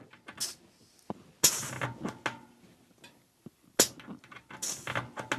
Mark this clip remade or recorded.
recorded